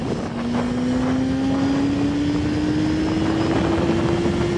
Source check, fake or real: real